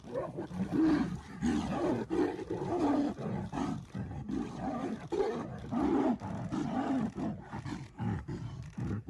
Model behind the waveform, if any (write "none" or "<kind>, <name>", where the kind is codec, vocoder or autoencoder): none